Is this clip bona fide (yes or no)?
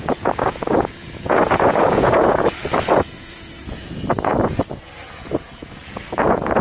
no